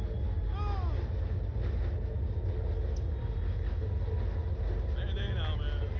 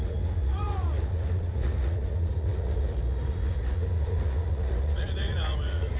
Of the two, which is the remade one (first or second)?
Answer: second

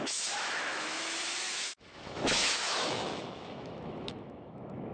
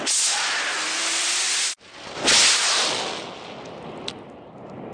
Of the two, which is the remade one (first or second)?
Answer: first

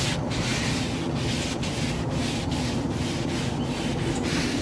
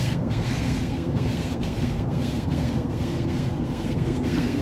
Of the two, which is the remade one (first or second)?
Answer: second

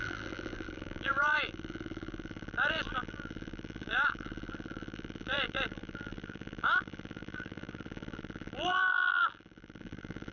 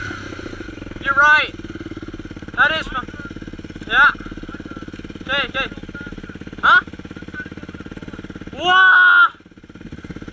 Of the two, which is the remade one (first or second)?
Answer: first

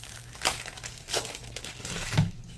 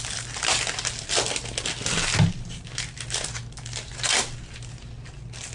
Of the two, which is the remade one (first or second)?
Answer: first